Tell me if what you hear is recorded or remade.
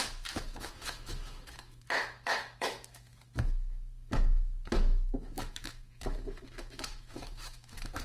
remade